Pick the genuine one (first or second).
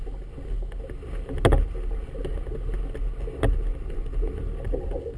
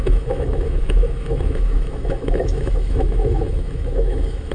first